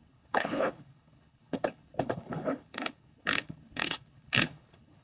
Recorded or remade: remade